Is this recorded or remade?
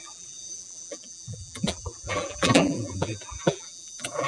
remade